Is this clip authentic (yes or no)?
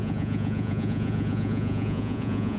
no